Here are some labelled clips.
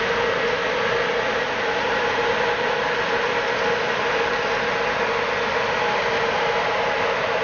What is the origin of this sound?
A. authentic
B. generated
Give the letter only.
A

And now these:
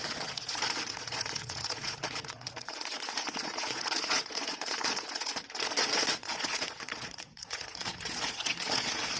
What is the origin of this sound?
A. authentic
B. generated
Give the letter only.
B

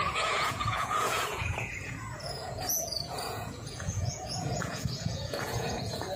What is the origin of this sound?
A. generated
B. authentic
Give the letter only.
A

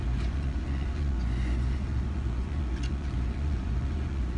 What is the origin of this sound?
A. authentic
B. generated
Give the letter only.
B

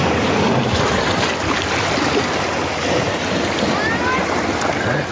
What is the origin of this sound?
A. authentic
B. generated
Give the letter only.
A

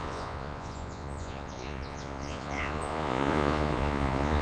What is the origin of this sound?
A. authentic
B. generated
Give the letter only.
B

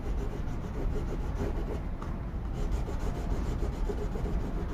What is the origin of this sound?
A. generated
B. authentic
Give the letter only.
B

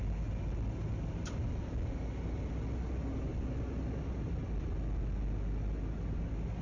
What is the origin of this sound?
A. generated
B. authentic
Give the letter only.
B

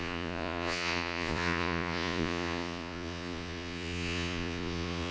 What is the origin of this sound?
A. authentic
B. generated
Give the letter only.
B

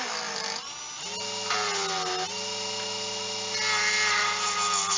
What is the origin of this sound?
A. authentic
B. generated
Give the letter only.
A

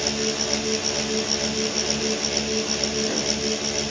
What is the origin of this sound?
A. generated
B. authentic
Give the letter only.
B